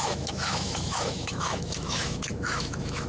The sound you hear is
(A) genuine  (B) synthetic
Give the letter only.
B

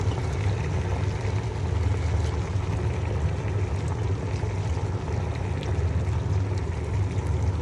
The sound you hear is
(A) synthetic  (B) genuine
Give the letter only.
B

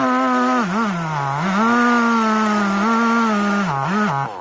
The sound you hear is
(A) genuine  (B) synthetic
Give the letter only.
A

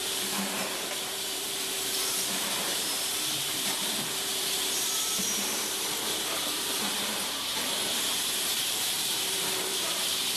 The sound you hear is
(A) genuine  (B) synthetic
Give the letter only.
B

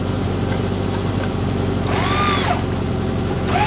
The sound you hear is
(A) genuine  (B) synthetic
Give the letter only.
A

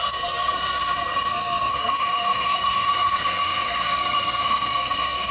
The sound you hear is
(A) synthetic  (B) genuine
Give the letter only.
A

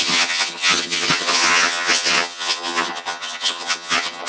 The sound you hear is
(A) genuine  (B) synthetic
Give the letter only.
B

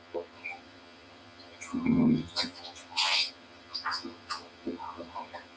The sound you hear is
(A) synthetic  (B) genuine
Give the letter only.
A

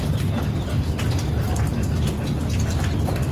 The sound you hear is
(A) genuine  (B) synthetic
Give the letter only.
A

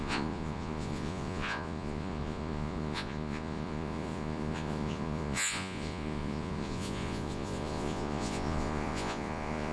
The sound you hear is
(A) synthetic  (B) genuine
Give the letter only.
A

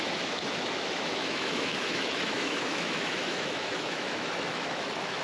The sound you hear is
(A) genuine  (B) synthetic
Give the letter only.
B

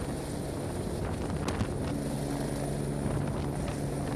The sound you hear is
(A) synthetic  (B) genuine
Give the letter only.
B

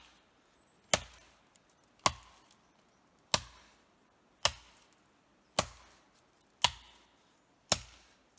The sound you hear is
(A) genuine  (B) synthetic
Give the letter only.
A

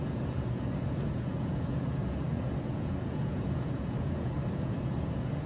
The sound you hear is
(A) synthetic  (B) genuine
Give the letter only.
A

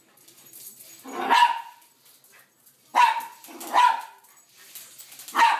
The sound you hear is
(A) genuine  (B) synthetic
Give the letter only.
A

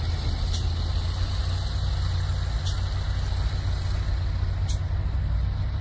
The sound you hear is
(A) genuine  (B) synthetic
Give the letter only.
A